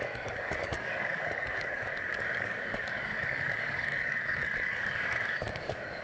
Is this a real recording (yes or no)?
no